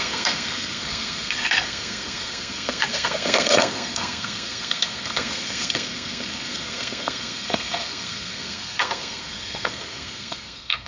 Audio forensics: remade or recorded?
remade